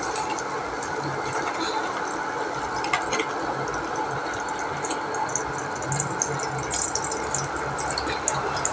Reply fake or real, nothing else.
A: real